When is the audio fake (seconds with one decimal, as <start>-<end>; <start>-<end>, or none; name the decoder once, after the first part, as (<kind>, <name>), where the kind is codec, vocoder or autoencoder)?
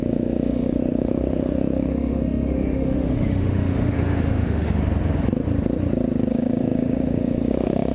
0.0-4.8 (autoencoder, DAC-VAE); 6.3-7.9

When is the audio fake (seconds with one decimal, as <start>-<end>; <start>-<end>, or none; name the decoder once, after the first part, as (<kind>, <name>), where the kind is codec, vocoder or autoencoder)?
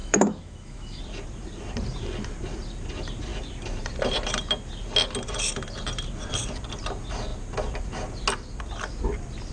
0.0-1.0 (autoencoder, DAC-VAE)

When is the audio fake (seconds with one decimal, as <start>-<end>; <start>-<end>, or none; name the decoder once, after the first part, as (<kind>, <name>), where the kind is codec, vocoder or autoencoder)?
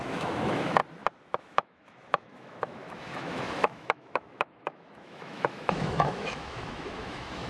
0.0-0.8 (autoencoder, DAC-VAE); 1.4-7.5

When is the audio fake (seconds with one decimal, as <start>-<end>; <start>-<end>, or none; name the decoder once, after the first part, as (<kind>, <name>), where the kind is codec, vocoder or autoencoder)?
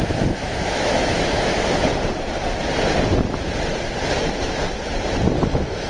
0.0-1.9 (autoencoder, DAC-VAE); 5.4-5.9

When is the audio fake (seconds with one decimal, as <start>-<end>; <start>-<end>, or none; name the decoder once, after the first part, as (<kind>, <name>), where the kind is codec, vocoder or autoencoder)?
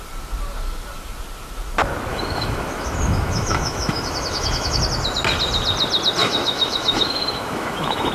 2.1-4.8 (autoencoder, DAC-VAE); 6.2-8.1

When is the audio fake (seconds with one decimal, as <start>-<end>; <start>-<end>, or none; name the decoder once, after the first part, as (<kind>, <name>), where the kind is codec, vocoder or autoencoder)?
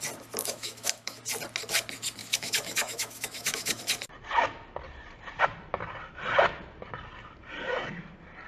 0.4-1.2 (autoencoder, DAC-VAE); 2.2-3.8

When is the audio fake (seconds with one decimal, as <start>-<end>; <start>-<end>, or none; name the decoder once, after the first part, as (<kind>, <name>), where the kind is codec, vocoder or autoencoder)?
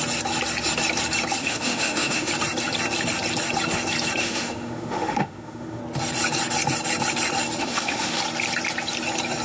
1.4-2.3 (autoencoder, DAC-VAE); 4.2-5.8; 7.6-8.2